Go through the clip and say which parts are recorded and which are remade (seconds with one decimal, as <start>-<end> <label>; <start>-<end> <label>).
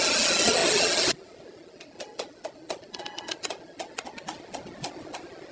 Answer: 0.0-5.5 recorded